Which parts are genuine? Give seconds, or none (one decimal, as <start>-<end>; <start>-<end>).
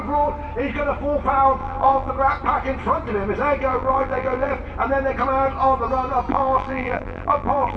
0.0-1.6; 2.1-3.7; 4.5-6.3